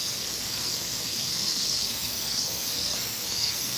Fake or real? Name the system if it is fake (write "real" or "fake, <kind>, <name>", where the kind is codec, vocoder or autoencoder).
fake, codec, SNAC